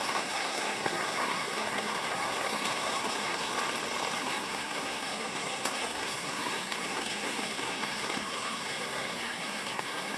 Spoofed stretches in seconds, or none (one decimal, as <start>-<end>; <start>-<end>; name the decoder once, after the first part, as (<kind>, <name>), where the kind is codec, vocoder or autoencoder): 0.0-3.5 (codec, SNAC); 4.2-10.2

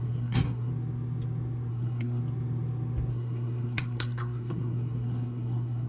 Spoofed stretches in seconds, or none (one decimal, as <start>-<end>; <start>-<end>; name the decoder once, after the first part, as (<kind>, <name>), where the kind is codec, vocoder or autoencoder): 0.0-0.7 (codec, SNAC); 1.7-2.2; 3.1-5.9

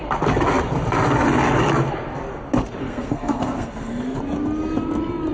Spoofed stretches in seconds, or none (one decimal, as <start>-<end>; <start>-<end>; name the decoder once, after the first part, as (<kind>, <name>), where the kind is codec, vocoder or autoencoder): 2.8-4.2 (codec, SNAC)

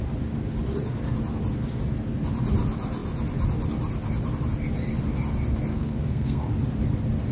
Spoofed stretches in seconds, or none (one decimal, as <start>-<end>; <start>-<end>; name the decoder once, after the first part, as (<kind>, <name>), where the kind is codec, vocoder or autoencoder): 5.7-6.5 (codec, SNAC)

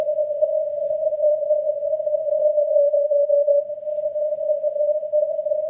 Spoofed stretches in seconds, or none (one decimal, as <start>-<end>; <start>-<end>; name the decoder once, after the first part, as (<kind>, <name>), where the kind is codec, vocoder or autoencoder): 0.7-1.3 (codec, SNAC); 2.6-3.5